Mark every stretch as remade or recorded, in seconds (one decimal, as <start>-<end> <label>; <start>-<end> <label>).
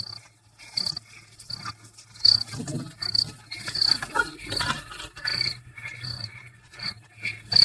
0.0-5.3 recorded; 5.3-6.9 remade; 6.9-7.6 recorded